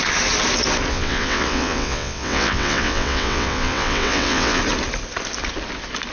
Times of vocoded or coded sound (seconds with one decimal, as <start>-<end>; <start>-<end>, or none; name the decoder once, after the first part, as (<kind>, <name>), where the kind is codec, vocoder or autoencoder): 0.9-4.6 (vocoder, WaveNeXt)